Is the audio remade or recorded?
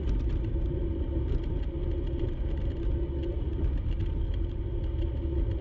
recorded